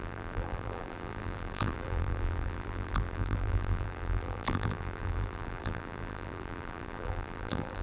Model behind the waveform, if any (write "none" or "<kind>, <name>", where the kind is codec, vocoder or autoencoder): vocoder, BigVGAN v2